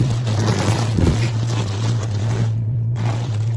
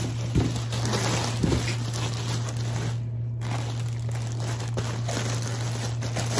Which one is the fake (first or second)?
first